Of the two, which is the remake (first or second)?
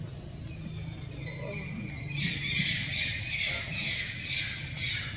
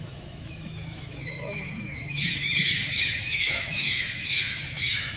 second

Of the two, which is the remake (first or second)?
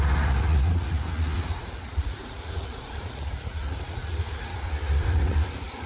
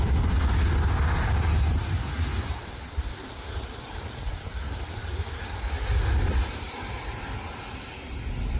first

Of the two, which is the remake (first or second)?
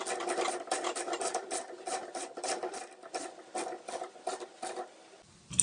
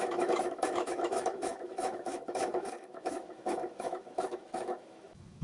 second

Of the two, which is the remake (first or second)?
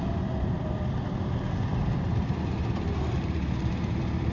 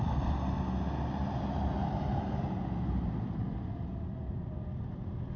first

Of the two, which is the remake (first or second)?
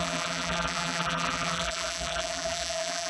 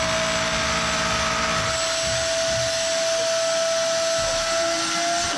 first